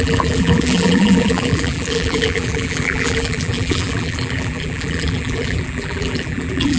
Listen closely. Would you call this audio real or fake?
fake